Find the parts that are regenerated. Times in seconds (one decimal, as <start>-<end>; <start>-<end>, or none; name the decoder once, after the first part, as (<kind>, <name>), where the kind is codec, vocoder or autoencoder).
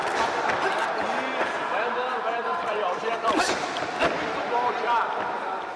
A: 0.0-0.7 (vocoder, BigVGAN v2); 2.4-3.2